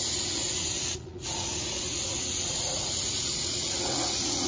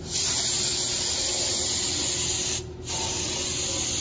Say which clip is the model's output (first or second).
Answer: first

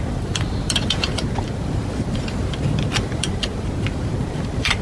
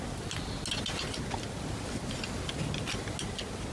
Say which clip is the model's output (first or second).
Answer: first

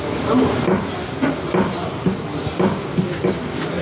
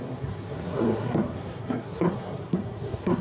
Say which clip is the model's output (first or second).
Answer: second